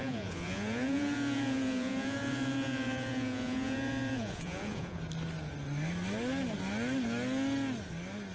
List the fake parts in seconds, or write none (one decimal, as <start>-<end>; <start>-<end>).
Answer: 0.0-5.0